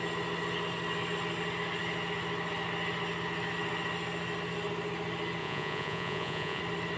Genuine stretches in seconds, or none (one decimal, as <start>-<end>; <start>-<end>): 0.0-5.4; 6.6-7.0